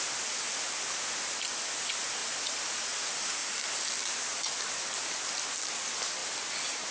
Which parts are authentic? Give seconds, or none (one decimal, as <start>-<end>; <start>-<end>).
0.0-6.9